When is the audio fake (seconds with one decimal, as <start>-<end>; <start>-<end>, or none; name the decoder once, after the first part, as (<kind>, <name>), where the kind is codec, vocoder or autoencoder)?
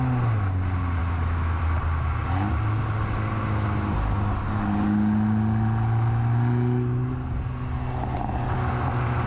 1.0-1.6 (autoencoder, DAC-VAE)